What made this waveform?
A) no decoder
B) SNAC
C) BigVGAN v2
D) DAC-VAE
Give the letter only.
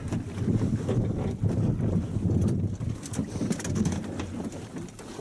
A